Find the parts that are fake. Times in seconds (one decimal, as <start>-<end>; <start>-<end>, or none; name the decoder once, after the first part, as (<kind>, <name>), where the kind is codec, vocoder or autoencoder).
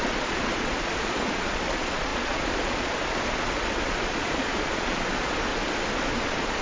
0.0-5.5 (vocoder, Vocos); 6.1-6.6